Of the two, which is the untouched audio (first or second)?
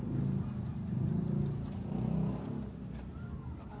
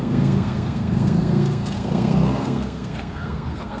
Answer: first